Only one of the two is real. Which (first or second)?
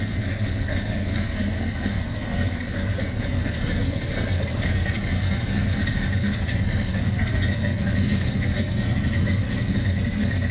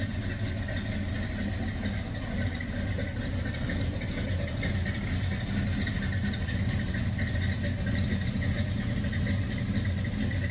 second